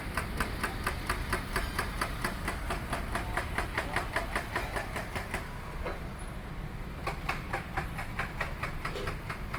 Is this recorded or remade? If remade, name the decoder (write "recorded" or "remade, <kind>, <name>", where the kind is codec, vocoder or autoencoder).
recorded